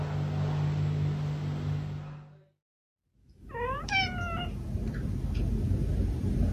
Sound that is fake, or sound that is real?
real